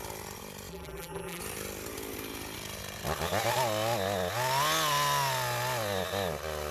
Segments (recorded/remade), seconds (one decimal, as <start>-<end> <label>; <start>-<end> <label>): 0.0-0.7 recorded; 0.7-1.4 remade; 1.4-6.7 recorded